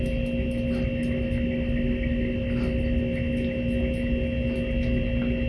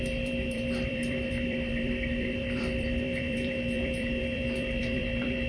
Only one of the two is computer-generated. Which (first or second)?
second